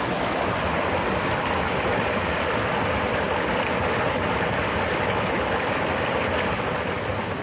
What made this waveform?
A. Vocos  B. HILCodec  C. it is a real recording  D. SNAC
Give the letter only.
C